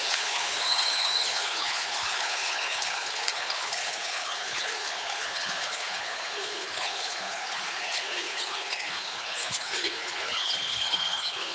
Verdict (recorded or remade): remade